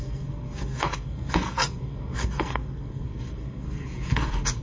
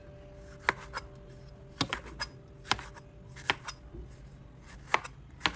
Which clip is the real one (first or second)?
second